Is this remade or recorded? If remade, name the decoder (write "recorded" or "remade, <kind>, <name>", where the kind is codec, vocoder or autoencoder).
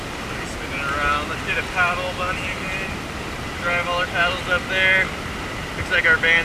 recorded